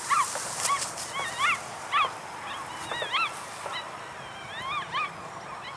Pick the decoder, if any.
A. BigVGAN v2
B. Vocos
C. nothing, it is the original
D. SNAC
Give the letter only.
C